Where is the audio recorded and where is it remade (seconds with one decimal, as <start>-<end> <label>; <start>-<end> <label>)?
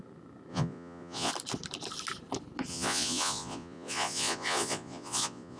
0.0-0.5 recorded; 0.5-1.3 remade; 1.3-2.7 recorded; 2.7-5.6 remade